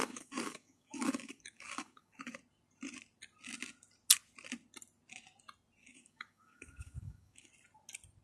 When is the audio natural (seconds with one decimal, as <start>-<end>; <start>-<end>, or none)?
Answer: 2.4-5.8; 7.5-8.2